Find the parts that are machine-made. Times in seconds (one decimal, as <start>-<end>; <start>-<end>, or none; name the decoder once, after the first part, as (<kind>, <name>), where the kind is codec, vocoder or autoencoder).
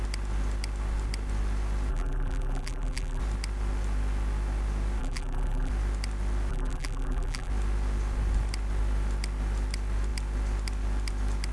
1.9-3.2 (vocoder, BigVGAN v2); 5.0-5.7; 6.5-7.5